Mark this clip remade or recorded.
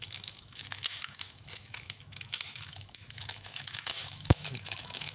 remade